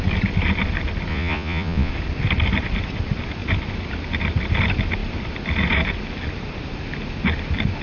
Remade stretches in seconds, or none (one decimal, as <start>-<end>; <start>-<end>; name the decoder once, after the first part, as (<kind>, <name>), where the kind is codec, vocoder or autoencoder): 1.1-1.9 (vocoder, Vocos)